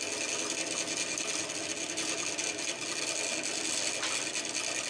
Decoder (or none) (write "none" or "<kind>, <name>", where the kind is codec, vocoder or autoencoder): none